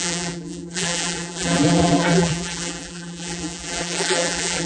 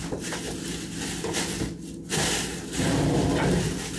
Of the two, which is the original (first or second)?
second